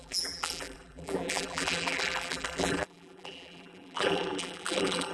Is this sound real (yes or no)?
no